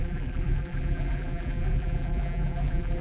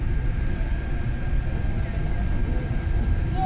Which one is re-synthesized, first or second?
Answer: first